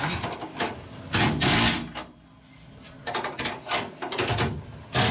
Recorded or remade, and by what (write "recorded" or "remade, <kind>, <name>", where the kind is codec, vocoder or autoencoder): recorded